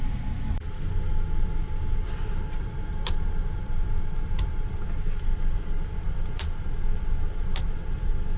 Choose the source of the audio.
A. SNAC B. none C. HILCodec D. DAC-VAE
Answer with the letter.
B